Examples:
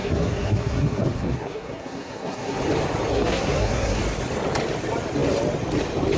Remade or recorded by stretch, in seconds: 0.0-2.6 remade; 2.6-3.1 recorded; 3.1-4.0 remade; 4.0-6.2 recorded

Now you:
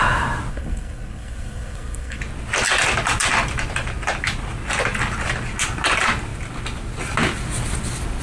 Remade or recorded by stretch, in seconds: 0.0-0.5 recorded; 0.5-2.2 remade; 2.2-8.2 recorded

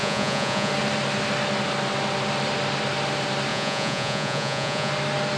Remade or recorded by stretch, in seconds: 0.0-0.7 remade; 0.7-3.5 recorded; 3.5-4.9 remade; 4.9-5.4 recorded

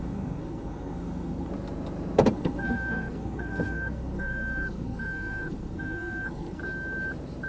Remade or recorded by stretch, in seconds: 0.0-1.5 remade; 1.5-2.3 recorded; 2.3-6.6 remade; 6.6-7.5 recorded

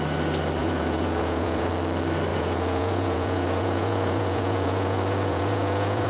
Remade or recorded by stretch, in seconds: 0.0-0.6 recorded; 0.6-1.7 remade; 1.7-2.3 recorded; 2.3-6.1 remade

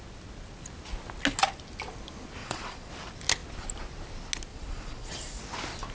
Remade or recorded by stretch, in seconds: 0.0-2.4 recorded; 2.4-2.9 remade; 2.9-4.5 recorded; 4.5-5.4 remade; 5.4-5.9 recorded

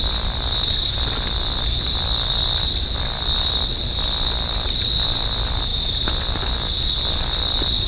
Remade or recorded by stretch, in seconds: 0.0-7.9 recorded